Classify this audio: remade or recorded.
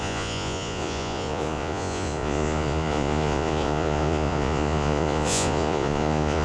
remade